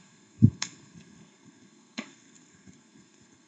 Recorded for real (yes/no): no